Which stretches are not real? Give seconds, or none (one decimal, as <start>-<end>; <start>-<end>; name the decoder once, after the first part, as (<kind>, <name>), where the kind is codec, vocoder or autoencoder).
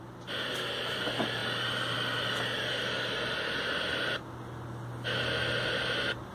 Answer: none